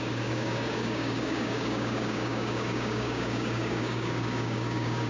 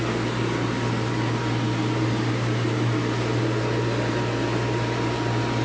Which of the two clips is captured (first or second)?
second